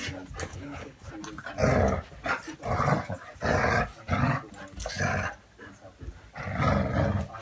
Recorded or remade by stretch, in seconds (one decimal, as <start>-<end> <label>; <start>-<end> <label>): 0.0-0.5 recorded; 0.5-1.1 remade; 1.1-7.4 recorded